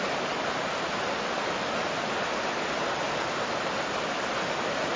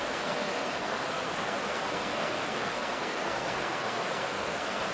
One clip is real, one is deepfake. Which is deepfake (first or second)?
second